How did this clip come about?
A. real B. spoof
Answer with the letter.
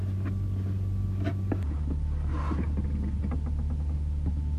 A